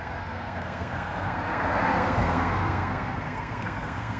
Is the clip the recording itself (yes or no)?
no